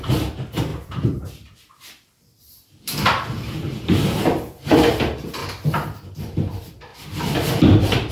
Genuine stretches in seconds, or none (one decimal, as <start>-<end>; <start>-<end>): 5.4-6.2

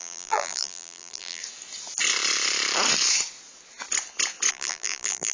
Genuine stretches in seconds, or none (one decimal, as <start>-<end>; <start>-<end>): 1.4-4.5

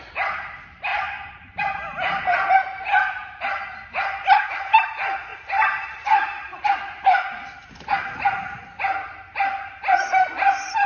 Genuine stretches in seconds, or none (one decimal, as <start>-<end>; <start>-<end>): 0.0-0.9; 1.6-5.3; 7.0-10.9

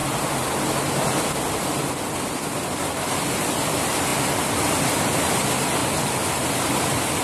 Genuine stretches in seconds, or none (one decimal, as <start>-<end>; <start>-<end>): 0.0-5.8; 6.8-7.2

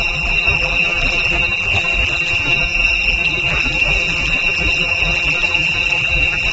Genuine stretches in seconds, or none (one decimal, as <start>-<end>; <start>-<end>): none

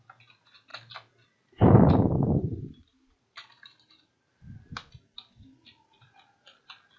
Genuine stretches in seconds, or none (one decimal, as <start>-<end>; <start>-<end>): 0.0-2.4; 4.3-7.0

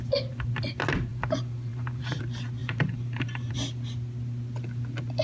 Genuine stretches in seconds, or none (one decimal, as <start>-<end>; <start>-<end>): 0.0-1.1; 2.2-2.6; 3.5-5.2

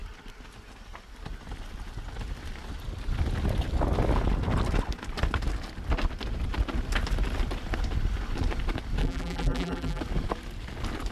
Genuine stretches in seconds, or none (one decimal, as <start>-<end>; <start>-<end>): 0.0-9.0; 10.0-11.1